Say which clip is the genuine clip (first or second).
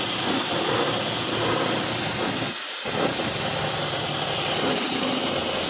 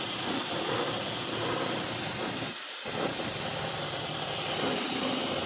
first